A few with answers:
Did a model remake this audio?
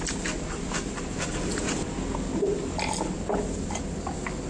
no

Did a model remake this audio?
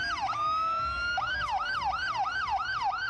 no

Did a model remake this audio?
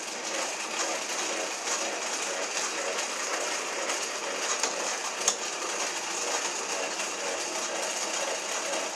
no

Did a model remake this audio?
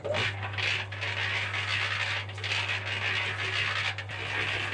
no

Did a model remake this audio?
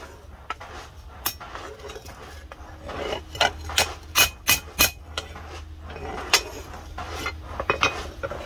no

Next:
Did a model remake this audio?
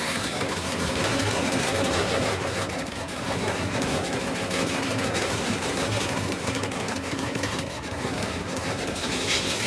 yes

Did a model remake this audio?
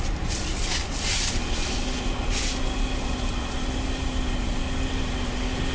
no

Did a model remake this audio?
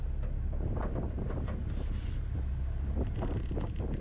no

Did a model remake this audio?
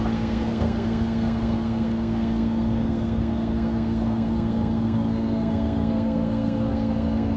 yes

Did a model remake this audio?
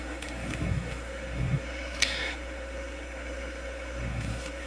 yes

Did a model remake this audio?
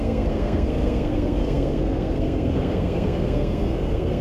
yes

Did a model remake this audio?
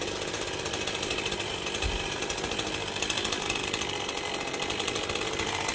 no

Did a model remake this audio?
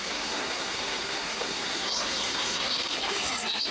yes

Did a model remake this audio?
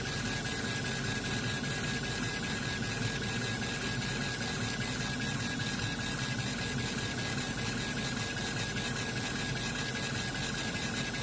no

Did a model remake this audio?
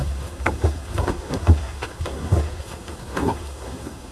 yes